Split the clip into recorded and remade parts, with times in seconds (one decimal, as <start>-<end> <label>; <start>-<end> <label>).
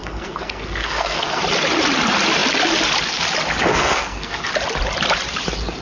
0.0-1.4 remade; 1.4-3.7 recorded; 3.7-4.5 remade; 4.5-5.8 recorded